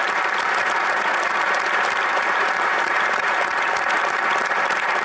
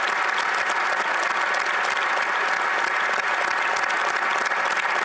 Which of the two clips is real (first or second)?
second